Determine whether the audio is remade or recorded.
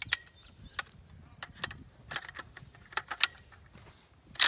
recorded